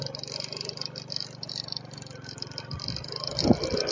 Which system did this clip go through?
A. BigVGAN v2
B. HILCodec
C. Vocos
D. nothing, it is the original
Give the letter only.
D